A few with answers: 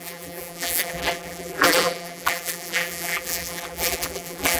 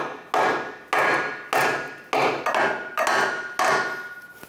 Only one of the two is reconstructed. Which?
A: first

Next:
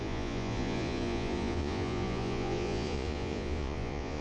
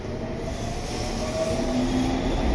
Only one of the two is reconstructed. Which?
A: first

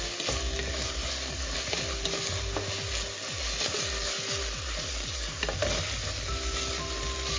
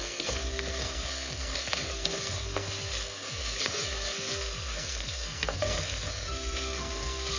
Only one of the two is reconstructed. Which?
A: second